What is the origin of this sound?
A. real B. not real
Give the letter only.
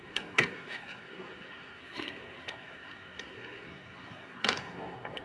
B